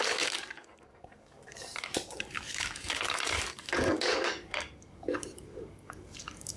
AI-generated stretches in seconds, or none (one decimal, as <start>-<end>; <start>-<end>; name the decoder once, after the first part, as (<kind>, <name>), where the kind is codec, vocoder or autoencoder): 0.0-6.6 (codec, DAC)